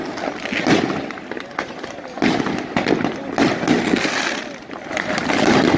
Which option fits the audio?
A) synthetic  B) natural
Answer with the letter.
B